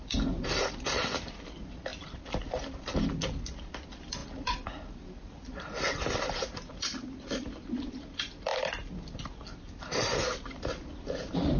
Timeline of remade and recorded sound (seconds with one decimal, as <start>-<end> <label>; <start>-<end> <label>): 0.0-1.9 remade; 1.9-3.6 recorded; 3.6-8.5 remade; 8.5-9.8 recorded; 9.8-11.6 remade